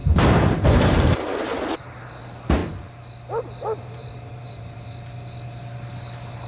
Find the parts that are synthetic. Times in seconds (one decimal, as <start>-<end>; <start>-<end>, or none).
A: 0.0-2.0; 4.0-4.9